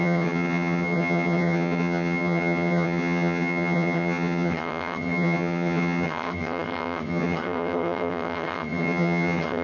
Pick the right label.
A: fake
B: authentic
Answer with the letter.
A